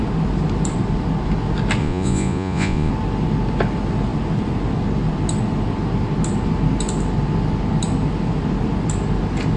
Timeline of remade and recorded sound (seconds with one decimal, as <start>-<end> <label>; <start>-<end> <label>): 0.0-1.8 recorded; 1.8-2.9 remade; 2.9-9.6 recorded